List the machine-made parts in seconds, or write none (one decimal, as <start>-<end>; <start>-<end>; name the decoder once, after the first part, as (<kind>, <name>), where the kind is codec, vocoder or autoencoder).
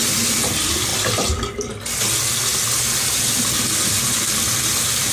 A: none